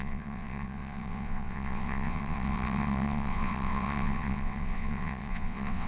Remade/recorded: remade